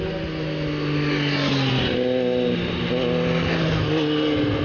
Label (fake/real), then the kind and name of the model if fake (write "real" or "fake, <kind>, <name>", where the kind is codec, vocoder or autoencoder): real